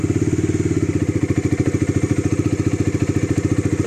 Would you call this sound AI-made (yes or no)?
no